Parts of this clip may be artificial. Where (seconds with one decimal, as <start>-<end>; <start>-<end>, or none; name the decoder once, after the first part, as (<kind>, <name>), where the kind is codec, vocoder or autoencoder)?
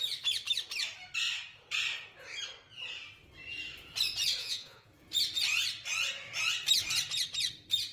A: 4.4-4.9 (vocoder, Vocos)